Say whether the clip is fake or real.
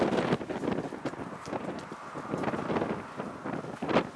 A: real